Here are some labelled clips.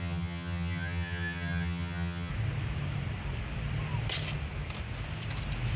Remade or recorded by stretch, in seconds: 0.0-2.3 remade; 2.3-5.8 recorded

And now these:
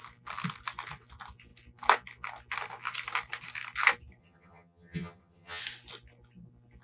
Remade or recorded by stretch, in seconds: 0.0-4.2 recorded; 4.2-5.6 remade; 5.6-6.8 recorded